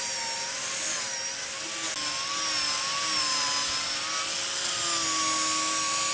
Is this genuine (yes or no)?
yes